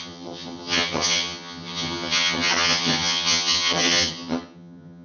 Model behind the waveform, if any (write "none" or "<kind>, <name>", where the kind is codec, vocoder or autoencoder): vocoder, HiFi-GAN